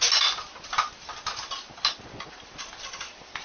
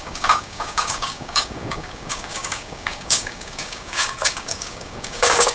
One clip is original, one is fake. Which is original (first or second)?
first